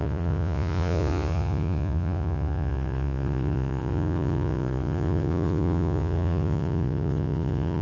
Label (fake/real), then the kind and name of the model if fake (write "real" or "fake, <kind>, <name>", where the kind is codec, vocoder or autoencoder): fake, vocoder, Vocos